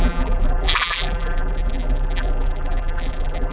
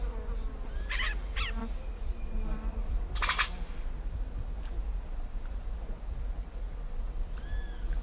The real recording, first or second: second